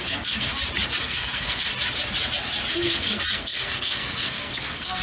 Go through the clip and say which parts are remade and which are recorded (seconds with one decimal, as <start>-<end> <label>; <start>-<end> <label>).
0.0-0.5 remade; 0.5-1.0 recorded; 1.0-1.7 remade; 1.7-2.7 recorded; 2.7-5.0 remade

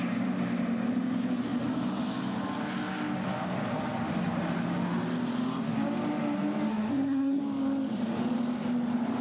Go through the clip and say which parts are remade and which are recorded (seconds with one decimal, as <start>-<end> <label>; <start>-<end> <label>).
0.0-6.7 recorded; 6.7-7.4 remade; 7.4-9.2 recorded

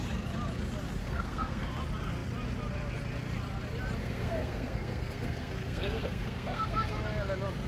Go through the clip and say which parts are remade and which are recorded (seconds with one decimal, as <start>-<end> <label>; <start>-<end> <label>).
0.0-1.0 recorded; 1.0-1.7 remade; 1.7-4.0 recorded; 4.0-7.0 remade; 7.0-7.7 recorded